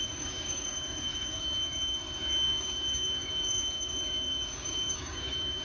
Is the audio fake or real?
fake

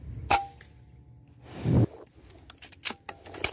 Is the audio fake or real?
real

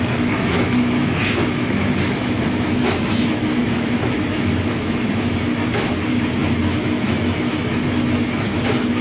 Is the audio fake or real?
fake